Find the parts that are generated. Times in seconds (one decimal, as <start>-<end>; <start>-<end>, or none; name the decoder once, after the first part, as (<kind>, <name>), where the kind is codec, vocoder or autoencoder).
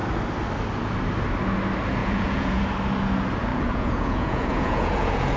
2.0-2.6 (vocoder, Vocos); 3.5-5.4